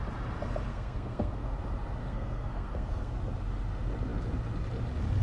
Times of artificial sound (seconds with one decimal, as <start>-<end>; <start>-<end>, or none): 0.7-1.5; 2.0-3.1